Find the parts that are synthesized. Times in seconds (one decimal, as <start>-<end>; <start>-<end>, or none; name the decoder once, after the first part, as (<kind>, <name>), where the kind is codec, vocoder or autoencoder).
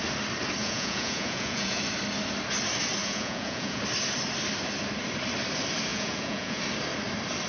0.6-1.8 (vocoder, Vocos); 3.0-3.8; 5.9-6.6